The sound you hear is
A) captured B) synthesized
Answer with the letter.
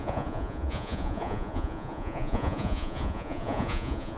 B